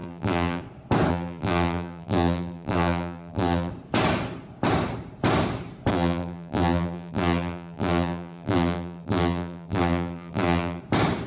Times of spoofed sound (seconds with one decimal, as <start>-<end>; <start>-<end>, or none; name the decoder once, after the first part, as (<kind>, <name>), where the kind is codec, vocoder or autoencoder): 0.0-0.6 (vocoder, BigVGAN v2); 1.1-3.7; 5.9-10.8